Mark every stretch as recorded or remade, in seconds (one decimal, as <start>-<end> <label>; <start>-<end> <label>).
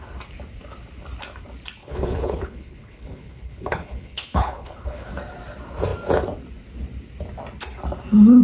0.0-1.8 recorded; 1.8-5.1 remade; 5.1-8.4 recorded